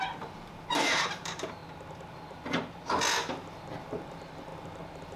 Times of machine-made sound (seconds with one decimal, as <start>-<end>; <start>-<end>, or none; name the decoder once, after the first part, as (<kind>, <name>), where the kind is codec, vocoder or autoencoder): 0.0-1.6 (vocoder, BigVGAN v2); 4.1-4.5